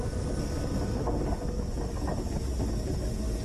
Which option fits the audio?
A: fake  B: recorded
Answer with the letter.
B